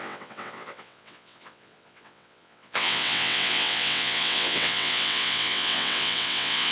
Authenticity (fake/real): fake